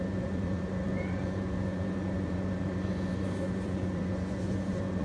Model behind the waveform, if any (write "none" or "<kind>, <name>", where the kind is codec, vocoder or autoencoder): vocoder, Vocos